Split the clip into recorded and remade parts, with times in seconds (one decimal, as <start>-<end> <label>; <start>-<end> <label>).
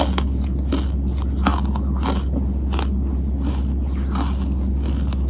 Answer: 0.0-5.3 recorded